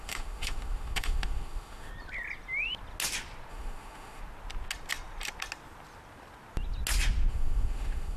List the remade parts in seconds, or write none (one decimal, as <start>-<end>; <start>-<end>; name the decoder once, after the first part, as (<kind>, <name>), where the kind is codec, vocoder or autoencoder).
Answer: 0.0-1.9 (autoencoder, DAC-VAE); 3.5-4.2; 7.3-8.2